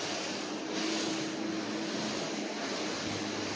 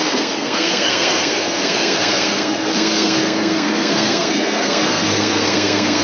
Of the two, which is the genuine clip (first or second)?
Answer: first